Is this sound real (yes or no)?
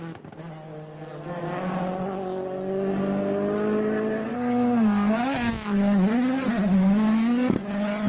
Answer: yes